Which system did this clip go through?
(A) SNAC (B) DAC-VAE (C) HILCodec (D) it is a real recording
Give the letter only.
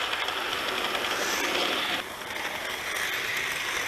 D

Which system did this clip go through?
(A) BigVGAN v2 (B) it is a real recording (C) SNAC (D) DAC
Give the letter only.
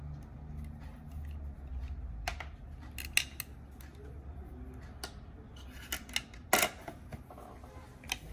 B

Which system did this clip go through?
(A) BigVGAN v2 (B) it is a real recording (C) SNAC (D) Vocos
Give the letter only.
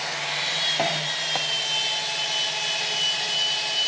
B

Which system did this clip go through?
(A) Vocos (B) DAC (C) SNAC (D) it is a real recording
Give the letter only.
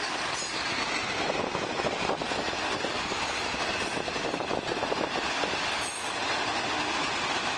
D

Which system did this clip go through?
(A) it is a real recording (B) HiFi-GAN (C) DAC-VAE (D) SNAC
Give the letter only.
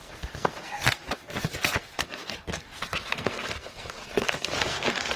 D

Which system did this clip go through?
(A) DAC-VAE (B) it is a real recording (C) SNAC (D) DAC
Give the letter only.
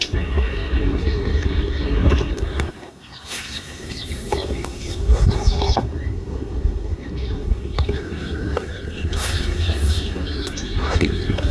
C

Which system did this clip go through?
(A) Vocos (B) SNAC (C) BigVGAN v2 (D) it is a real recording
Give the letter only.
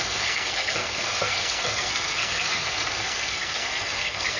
B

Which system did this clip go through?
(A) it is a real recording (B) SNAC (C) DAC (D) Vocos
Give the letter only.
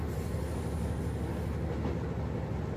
A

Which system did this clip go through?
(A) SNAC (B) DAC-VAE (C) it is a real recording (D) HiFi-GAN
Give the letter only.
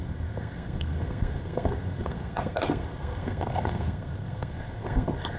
A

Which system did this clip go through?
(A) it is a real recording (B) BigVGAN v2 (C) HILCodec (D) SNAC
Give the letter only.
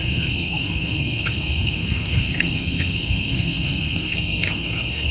D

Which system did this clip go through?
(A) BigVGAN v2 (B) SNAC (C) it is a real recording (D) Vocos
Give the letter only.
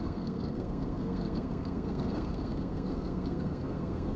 B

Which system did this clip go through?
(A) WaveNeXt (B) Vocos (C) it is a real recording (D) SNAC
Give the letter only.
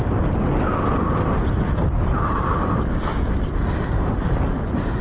C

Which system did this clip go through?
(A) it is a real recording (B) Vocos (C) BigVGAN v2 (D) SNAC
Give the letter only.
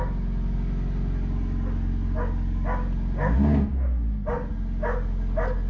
A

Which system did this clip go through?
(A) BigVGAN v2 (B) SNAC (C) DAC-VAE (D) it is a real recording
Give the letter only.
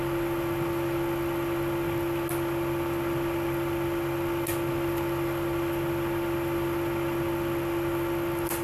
D